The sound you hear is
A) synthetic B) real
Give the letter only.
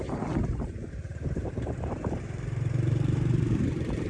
A